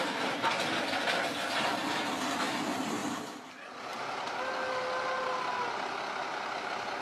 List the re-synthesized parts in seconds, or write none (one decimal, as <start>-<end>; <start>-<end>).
none